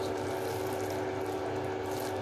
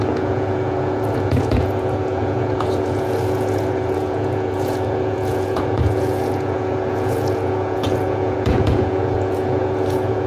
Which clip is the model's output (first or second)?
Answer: second